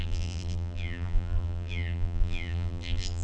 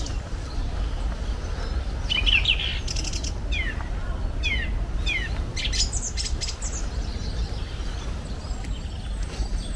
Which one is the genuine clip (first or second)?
second